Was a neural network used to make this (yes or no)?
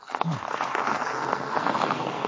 yes